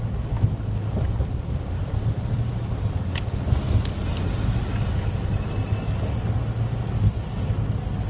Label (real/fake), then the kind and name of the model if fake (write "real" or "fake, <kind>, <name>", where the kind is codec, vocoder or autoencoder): real